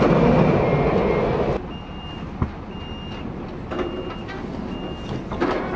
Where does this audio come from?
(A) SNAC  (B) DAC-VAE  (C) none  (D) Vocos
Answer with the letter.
C